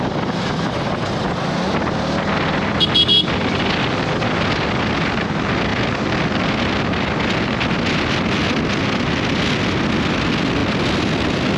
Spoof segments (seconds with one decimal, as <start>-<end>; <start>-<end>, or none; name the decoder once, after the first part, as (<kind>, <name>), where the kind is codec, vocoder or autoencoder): none